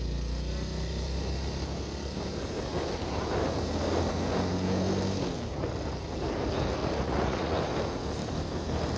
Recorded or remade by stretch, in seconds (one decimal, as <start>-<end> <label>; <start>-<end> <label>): 0.0-6.8 recorded; 6.8-7.6 remade; 7.6-9.0 recorded